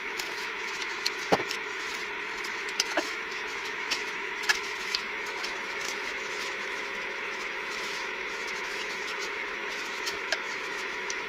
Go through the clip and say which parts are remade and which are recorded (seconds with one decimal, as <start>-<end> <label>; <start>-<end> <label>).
0.0-1.9 remade; 1.9-2.5 recorded; 2.5-11.3 remade

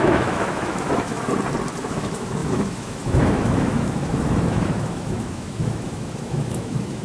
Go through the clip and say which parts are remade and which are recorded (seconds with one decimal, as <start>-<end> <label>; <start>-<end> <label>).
0.0-1.3 remade; 1.3-1.8 recorded; 1.8-7.0 remade